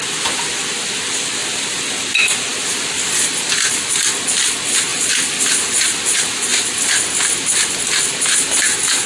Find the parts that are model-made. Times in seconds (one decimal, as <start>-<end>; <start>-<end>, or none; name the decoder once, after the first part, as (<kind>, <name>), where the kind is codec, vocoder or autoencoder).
1.4-1.9 (vocoder, BigVGAN v2); 4.9-5.5